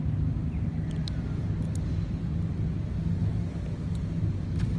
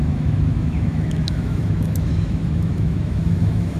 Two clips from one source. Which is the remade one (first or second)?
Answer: second